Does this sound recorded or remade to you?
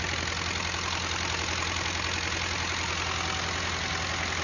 recorded